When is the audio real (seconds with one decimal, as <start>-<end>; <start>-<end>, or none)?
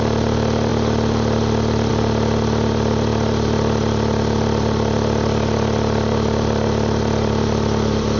0.0-8.2